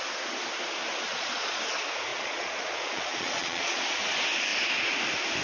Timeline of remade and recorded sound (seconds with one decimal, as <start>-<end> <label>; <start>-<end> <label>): 0.0-1.1 recorded; 1.1-1.6 remade; 1.6-2.1 recorded; 2.1-3.8 remade; 3.8-5.4 recorded